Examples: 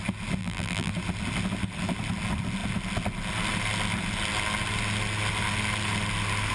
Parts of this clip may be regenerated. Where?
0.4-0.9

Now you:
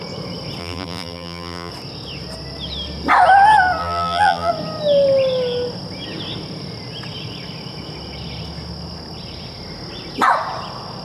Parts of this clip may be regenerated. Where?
0.6-1.7; 3.8-4.5

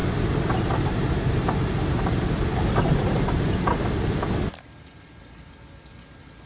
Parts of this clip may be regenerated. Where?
0.0-0.5; 3.1-4.6

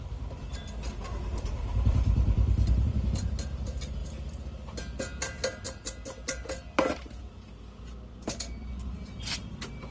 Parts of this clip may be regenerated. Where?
1.1-3.0

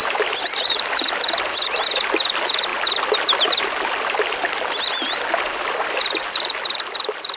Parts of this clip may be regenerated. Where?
0.0-0.6

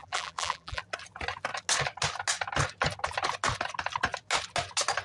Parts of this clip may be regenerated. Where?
0.0-0.8